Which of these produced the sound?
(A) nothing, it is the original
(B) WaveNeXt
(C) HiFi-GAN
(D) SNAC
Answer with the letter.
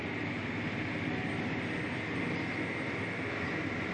A